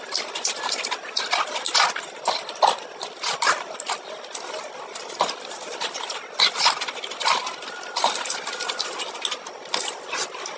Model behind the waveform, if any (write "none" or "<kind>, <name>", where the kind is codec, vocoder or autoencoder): none